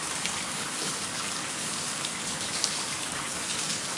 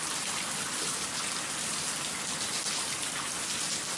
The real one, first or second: second